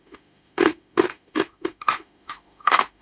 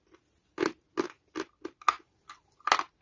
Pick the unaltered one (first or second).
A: second